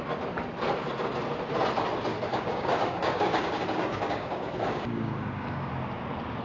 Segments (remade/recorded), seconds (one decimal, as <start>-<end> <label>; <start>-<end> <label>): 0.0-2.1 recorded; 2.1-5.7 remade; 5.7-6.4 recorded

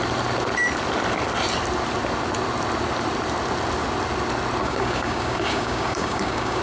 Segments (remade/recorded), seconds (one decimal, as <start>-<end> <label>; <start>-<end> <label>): 0.0-4.6 recorded; 4.6-6.6 remade

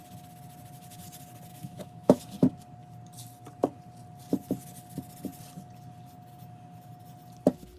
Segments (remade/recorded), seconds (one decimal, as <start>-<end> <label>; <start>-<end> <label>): 0.0-1.5 recorded; 1.5-2.2 remade; 2.2-7.8 recorded

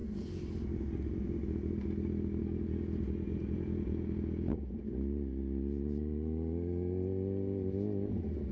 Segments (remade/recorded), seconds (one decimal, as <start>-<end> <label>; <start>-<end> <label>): 0.0-3.3 recorded; 3.3-4.9 remade; 4.9-8.5 recorded